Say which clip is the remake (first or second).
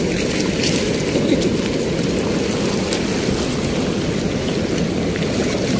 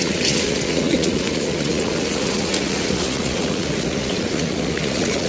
second